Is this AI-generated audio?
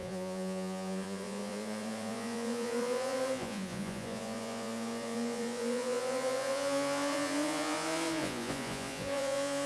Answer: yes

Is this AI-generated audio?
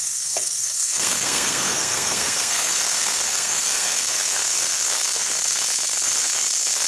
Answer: yes